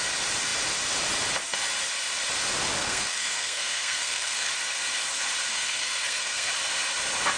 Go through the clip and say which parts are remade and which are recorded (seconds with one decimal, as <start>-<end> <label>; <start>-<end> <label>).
0.0-2.8 recorded; 2.8-4.5 remade; 4.5-5.5 recorded; 5.5-6.5 remade; 6.5-7.4 recorded